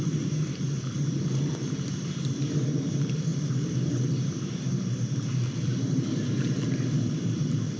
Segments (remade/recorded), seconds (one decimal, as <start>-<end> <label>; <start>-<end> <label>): 0.0-7.8 remade